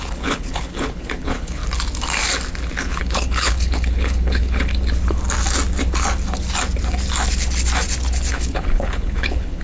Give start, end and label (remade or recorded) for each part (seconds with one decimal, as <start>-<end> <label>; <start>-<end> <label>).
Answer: 0.0-1.6 remade; 1.6-2.8 recorded; 2.8-4.7 remade; 4.7-8.3 recorded; 8.3-9.6 remade